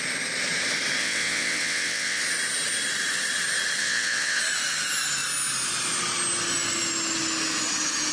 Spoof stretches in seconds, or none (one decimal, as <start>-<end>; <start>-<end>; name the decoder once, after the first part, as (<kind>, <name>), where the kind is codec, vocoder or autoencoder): 1.0-2.2 (vocoder, WaveNeXt); 3.8-4.4